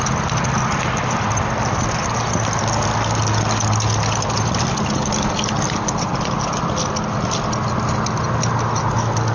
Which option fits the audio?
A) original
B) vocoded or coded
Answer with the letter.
A